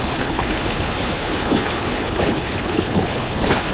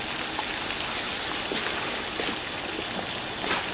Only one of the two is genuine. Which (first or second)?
second